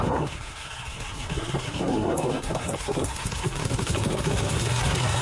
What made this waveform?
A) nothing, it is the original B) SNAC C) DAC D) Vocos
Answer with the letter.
B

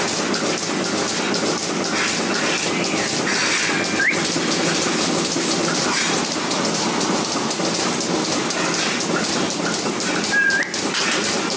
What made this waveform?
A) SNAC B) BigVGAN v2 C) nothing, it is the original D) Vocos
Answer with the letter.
C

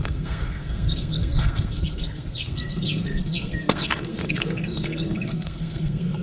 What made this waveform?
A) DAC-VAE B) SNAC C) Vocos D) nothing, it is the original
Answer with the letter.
B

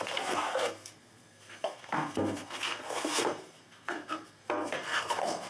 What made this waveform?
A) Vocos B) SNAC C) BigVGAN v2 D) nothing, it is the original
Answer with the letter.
B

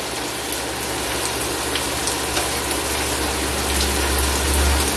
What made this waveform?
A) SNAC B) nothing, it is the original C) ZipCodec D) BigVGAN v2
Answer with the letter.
B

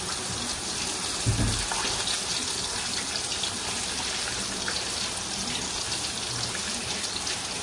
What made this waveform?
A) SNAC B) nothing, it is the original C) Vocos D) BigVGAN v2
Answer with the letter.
B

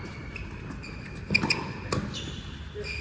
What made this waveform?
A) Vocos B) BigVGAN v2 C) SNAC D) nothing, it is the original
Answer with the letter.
D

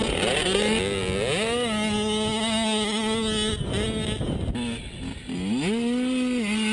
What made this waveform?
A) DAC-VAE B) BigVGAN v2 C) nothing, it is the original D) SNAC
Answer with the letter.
C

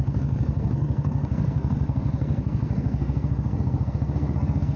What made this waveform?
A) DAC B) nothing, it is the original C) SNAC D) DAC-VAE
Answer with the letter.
C